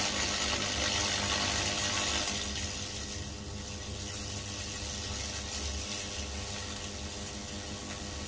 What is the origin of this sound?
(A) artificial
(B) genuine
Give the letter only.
B